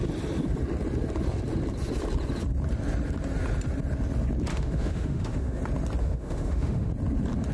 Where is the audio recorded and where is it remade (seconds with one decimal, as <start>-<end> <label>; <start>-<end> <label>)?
0.0-4.5 recorded; 4.5-5.6 remade; 5.6-6.0 recorded; 6.0-6.9 remade; 6.9-7.5 recorded